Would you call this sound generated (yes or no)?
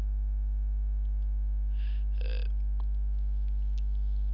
no